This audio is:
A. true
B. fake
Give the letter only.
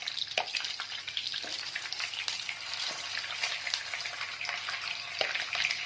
A